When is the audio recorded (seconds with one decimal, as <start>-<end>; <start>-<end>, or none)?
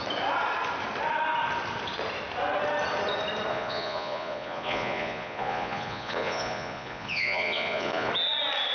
0.0-3.5; 8.1-8.7